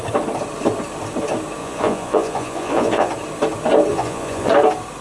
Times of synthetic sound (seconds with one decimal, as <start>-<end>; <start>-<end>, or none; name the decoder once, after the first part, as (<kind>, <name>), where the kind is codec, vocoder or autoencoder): 1.6-3.1 (vocoder, Vocos); 3.9-4.5